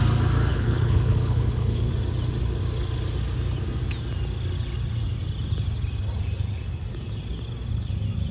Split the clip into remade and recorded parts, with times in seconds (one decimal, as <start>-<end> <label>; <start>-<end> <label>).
0.0-0.5 recorded; 0.5-1.9 remade; 1.9-8.3 recorded

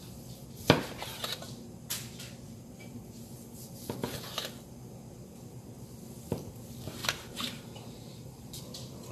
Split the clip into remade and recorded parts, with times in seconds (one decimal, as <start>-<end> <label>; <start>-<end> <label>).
0.0-7.0 recorded; 7.0-8.6 remade; 8.6-9.1 recorded

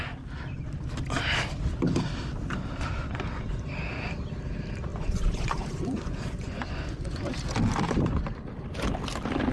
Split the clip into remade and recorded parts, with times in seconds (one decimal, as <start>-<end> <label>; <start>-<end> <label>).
0.0-3.0 recorded; 3.0-3.7 remade; 3.7-4.9 recorded; 4.9-7.2 remade; 7.2-9.5 recorded

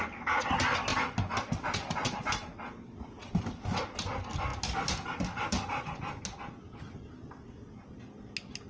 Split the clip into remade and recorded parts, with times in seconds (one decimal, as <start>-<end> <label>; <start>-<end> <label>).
0.0-8.7 recorded

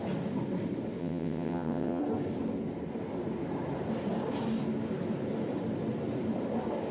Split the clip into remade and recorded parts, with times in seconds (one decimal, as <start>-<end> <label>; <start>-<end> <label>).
0.0-1.0 recorded; 1.0-2.0 remade; 2.0-6.9 recorded

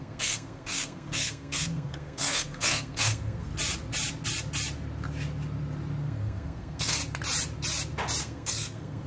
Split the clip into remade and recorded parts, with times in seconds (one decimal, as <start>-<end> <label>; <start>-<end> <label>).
0.0-3.5 remade; 3.5-6.0 recorded; 6.0-7.0 remade; 7.0-8.2 recorded; 8.2-9.1 remade

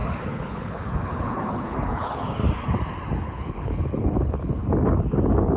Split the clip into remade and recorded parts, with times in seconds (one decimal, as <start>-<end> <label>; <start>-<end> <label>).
0.0-2.4 remade; 2.4-3.2 recorded; 3.2-4.6 remade; 4.6-5.6 recorded